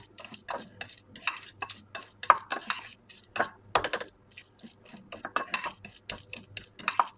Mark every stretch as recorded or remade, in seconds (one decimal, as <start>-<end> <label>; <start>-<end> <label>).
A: 0.0-7.2 recorded